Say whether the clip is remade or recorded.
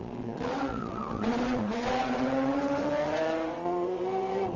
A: remade